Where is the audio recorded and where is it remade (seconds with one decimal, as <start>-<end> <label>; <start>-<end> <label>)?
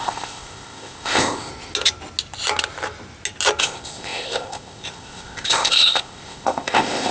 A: 0.0-1.5 remade; 1.5-3.6 recorded; 3.6-7.1 remade